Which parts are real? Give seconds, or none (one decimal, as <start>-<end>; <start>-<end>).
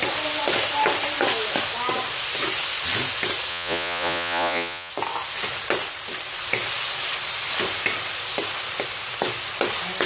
0.0-3.5; 4.9-10.1